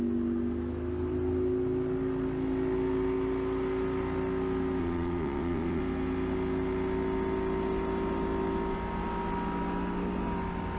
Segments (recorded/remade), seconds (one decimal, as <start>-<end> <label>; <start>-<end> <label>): 0.0-4.8 recorded; 4.8-5.8 remade; 5.8-10.8 recorded